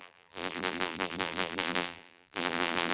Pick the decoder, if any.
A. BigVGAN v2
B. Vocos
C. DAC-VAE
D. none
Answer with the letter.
A